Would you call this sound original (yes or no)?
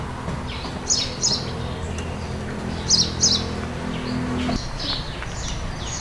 yes